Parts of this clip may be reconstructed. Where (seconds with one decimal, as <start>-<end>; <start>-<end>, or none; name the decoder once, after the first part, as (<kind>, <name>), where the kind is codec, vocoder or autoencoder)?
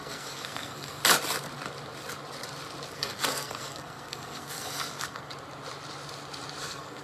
0.0-1.0 (codec, SNAC); 2.9-5.3; 6.6-7.0